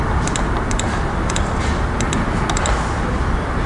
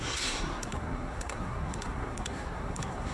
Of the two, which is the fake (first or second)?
second